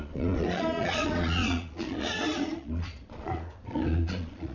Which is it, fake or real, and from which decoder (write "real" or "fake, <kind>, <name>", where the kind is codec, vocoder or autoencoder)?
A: fake, vocoder, Vocos